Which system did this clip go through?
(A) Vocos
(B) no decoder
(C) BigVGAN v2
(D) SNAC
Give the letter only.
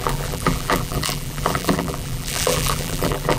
C